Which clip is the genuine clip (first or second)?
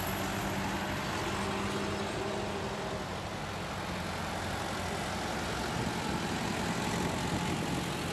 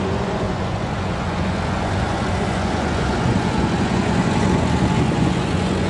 first